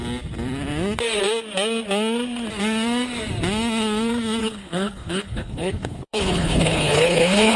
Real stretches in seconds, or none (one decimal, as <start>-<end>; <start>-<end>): 0.0-4.4